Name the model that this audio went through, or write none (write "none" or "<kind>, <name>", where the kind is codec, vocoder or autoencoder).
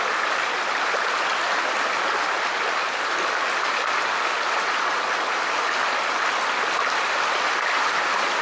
none